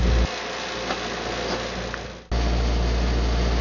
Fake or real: real